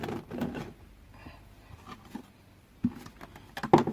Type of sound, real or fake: real